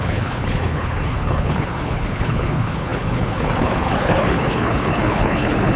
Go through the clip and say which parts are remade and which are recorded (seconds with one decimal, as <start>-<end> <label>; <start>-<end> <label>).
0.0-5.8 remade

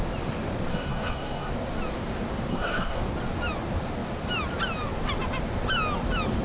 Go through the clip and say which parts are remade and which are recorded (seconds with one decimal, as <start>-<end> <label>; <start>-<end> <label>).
0.0-0.7 recorded; 0.7-1.5 remade; 1.5-2.5 recorded; 2.5-3.0 remade; 3.0-6.4 recorded

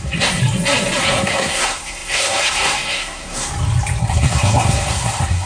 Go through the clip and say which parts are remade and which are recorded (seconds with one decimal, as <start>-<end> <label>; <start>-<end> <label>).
0.0-0.4 remade; 0.4-1.0 recorded; 1.0-3.5 remade; 3.5-4.0 recorded; 4.0-5.5 remade

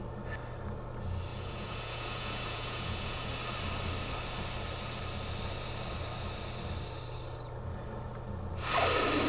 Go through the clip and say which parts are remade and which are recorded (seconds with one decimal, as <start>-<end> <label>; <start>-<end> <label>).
0.0-1.3 recorded; 1.3-3.3 remade; 3.3-9.3 recorded

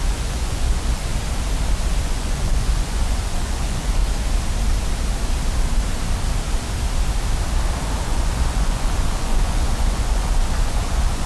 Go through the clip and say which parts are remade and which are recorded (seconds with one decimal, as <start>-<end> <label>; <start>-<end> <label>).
0.0-1.1 remade; 1.1-2.0 recorded; 2.0-4.0 remade; 4.0-8.0 recorded; 8.0-11.3 remade